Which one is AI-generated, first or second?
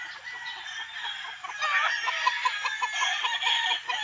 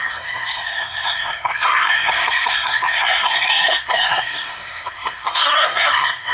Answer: second